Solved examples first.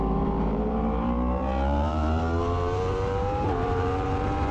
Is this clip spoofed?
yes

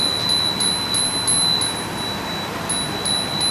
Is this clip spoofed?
no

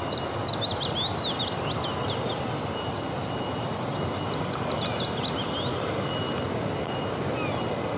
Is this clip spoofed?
no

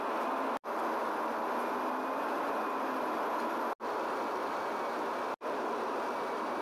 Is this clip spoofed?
no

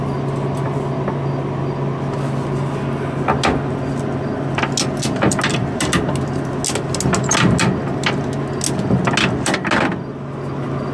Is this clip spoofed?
no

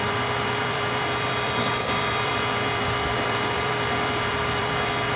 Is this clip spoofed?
yes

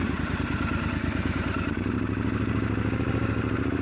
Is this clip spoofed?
yes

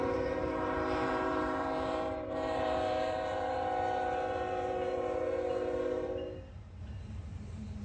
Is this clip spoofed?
yes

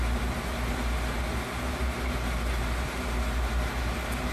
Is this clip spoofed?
no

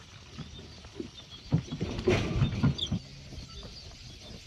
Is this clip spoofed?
no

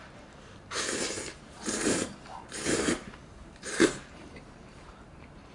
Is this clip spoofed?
yes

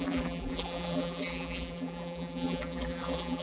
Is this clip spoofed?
yes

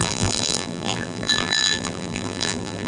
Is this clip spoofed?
yes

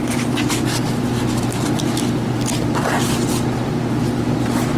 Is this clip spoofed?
no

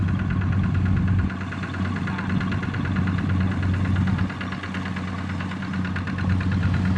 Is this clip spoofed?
no